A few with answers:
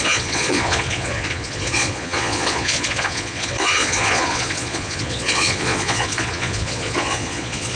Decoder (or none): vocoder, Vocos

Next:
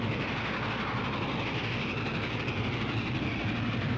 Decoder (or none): none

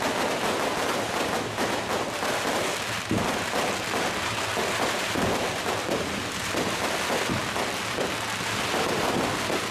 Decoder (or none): vocoder, BigVGAN v2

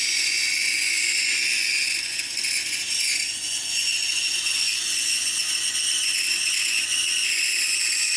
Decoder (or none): vocoder, Vocos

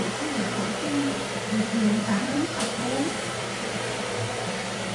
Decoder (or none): vocoder, BigVGAN v2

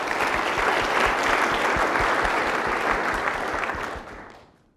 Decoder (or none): none